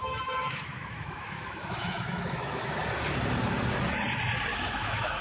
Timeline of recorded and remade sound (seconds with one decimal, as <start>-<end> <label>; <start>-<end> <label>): 0.0-2.8 remade; 2.8-4.5 recorded; 4.5-5.2 remade